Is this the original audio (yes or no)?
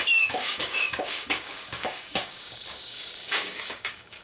no